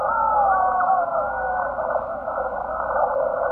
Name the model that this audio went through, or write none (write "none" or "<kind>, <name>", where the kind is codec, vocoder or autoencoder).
none